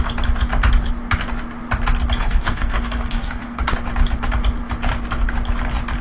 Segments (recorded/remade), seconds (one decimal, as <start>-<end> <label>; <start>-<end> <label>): 0.0-2.2 recorded; 2.2-3.6 remade; 3.6-6.0 recorded